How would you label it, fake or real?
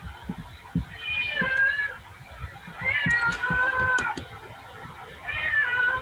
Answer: real